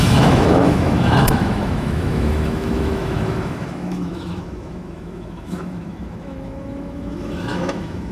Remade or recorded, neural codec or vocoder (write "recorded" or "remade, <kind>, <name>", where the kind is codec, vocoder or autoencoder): remade, autoencoder, DAC-VAE